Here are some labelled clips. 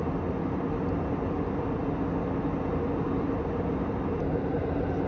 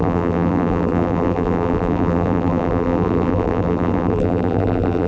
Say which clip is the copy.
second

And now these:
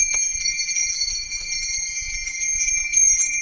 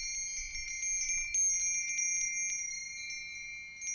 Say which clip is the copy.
first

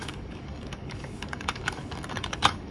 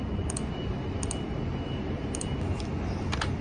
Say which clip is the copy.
first